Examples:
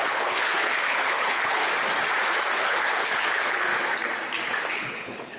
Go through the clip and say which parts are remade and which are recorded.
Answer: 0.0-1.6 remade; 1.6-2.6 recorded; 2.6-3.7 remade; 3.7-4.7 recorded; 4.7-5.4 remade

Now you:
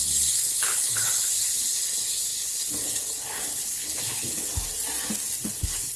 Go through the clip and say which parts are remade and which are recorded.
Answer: 0.0-4.5 remade; 4.5-5.4 recorded; 5.4-6.0 remade

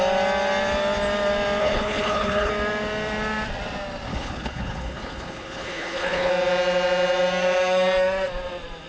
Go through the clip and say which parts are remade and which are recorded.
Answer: 0.0-1.6 recorded; 1.6-2.5 remade; 2.5-4.1 recorded; 4.1-6.3 remade; 6.3-8.9 recorded